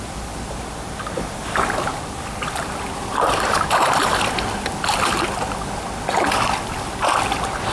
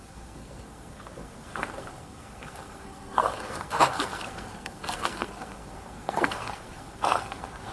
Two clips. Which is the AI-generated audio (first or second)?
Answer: second